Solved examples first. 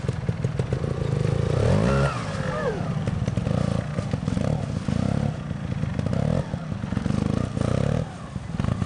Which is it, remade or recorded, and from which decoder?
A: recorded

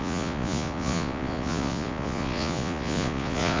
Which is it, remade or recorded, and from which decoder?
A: remade, vocoder, Vocos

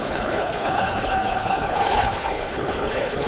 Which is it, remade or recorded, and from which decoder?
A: remade, codec, HILCodec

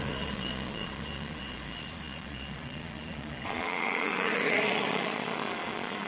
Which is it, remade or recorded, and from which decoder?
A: remade, vocoder, Vocos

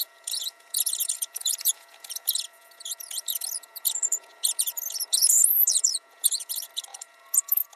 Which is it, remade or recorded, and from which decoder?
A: remade, vocoder, Vocos